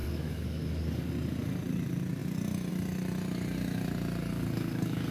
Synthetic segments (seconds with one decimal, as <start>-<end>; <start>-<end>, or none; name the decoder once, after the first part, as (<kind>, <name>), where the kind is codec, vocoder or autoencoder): 0.0-1.1 (codec, DAC); 4.3-5.1